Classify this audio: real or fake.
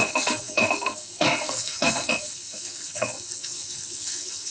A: fake